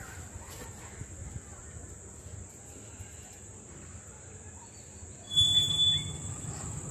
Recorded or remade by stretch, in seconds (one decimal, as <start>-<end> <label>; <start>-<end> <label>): 0.0-1.5 recorded; 1.5-5.6 remade; 5.6-6.9 recorded